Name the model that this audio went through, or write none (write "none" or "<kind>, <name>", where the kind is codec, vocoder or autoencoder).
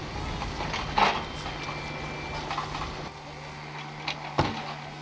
none